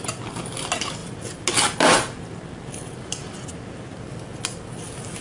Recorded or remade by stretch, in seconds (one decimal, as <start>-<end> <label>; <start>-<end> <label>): 0.0-5.2 recorded